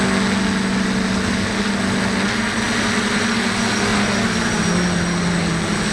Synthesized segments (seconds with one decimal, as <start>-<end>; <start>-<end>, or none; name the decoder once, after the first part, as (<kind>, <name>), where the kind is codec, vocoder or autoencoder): none